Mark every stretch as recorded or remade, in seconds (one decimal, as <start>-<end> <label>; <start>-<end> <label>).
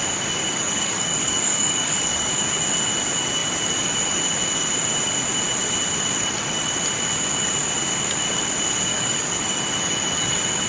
0.0-0.4 recorded; 0.4-2.3 remade; 2.3-8.9 recorded; 8.9-9.6 remade; 9.6-10.7 recorded